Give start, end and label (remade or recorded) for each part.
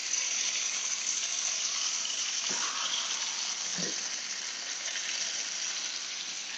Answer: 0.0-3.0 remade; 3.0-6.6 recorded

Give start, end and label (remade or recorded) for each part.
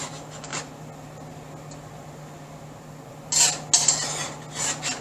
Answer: 0.0-5.0 recorded